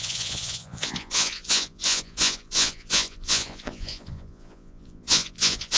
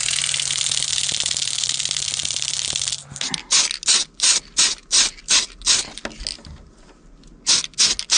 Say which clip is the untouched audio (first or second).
second